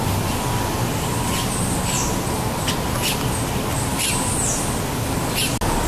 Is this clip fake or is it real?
real